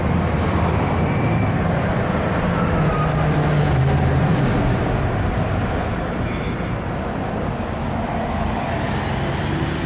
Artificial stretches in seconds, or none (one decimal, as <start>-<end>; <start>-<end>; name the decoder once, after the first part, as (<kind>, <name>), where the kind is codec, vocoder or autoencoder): 0.0-1.9 (vocoder, BigVGAN v2)